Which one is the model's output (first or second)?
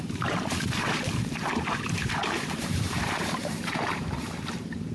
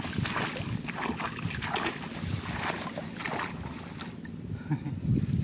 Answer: first